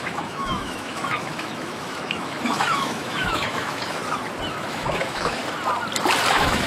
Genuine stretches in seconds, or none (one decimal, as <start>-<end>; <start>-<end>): 4.0-4.5; 5.4-6.3